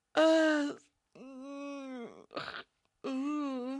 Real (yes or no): yes